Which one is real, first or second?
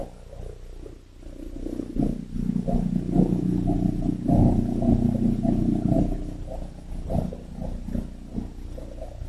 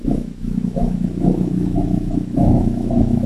first